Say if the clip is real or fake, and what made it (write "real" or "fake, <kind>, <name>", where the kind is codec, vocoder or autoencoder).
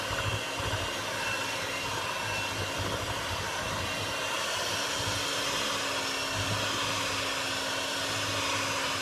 real